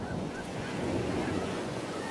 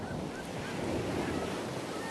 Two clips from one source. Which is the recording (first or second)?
second